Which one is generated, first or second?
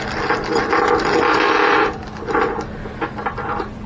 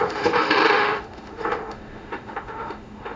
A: second